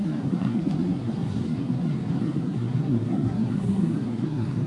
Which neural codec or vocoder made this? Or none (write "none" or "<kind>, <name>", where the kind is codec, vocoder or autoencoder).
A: codec, SNAC